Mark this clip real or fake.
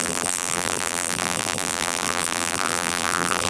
fake